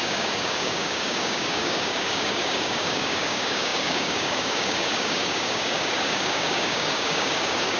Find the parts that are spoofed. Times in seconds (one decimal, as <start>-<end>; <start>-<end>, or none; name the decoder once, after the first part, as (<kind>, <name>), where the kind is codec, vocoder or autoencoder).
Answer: 0.0-7.8 (codec, DAC)